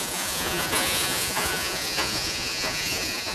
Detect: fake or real fake